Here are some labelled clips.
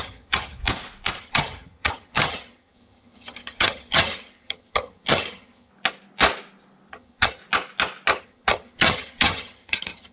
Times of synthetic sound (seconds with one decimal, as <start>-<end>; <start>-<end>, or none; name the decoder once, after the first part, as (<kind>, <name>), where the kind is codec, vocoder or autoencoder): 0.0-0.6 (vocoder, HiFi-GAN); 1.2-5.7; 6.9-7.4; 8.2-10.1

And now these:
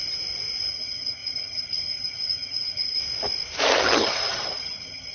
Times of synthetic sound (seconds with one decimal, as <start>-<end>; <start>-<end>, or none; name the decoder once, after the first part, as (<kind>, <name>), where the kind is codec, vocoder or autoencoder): 0.7-3.0 (vocoder, HiFi-GAN); 3.8-5.1

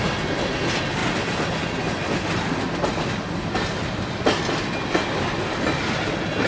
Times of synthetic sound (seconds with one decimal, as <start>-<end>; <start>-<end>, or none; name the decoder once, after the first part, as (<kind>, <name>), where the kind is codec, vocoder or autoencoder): none

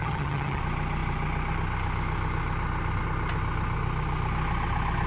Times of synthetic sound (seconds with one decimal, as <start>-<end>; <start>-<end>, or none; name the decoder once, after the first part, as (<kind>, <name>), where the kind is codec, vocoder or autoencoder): 0.0-0.6 (vocoder, HiFi-GAN)